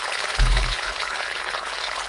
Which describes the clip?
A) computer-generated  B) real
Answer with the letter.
A